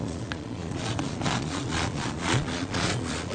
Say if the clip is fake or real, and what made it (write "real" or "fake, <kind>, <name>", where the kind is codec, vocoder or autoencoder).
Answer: fake, vocoder, Vocos